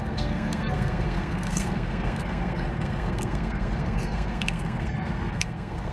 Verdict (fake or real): fake